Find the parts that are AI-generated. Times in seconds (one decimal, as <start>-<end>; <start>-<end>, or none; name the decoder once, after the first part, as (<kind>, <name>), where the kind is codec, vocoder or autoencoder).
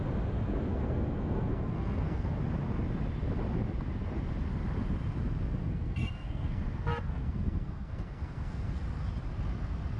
0.7-2.4 (codec, SNAC); 5.6-8.8